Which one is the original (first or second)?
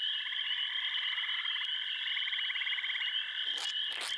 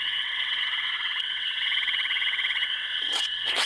first